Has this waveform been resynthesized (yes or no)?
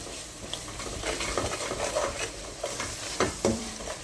yes